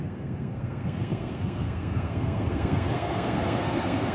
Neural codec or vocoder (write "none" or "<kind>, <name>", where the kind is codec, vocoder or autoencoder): codec, SNAC